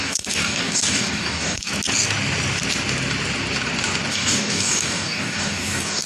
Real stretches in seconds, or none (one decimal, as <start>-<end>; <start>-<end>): 1.7-4.1

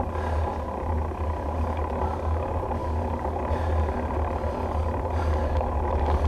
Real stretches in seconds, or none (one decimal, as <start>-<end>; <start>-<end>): 0.0-2.8; 3.4-6.3